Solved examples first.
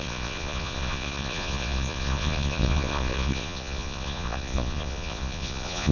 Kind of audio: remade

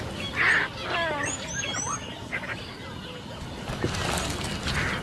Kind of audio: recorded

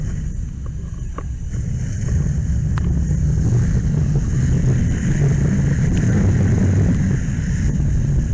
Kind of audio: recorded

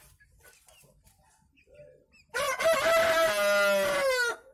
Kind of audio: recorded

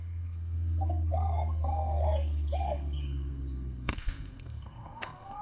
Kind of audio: remade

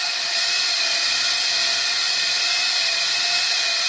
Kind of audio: recorded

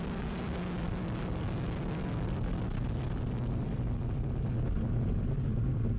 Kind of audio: recorded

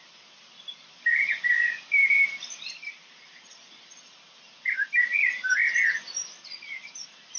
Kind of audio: remade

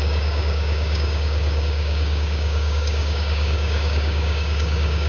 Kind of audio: remade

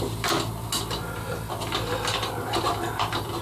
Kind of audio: recorded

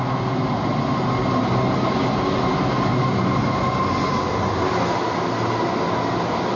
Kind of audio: recorded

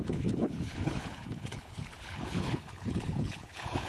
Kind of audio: remade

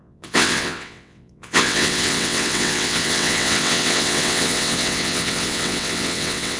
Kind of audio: remade